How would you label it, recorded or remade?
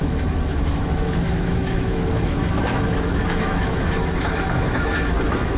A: remade